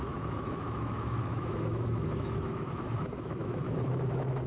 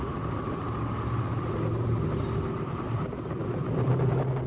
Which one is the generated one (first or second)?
first